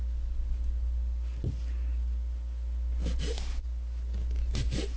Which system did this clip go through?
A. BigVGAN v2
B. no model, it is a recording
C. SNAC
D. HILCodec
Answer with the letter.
B